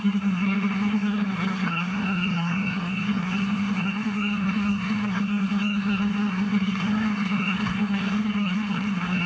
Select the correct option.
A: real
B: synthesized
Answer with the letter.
B